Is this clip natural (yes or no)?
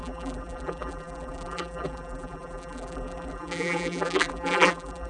no